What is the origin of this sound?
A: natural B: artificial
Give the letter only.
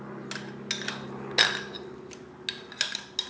A